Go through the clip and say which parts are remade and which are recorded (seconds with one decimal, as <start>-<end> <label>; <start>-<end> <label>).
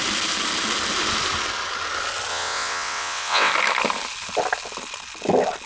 0.0-2.3 recorded; 2.3-3.5 remade; 3.5-5.7 recorded